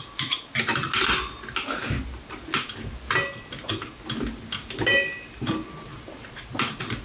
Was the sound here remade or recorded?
recorded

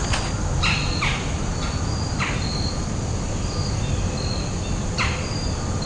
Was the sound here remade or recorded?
recorded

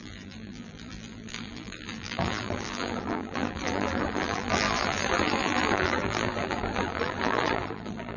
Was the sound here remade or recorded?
remade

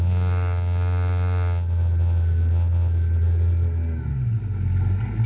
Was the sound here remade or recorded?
recorded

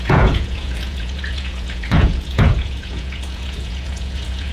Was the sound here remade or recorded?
remade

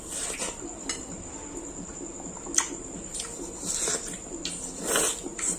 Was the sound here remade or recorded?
recorded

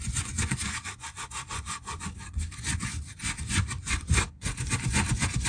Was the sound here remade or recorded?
remade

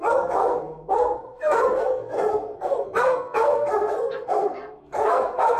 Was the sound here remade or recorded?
remade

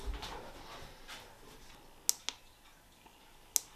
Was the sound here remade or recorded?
recorded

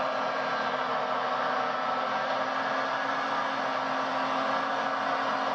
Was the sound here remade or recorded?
recorded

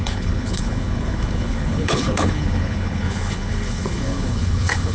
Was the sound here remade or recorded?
remade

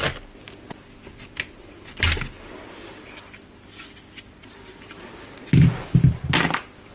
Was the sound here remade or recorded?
recorded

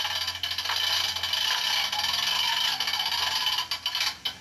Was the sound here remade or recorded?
recorded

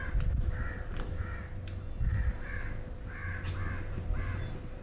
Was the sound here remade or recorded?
recorded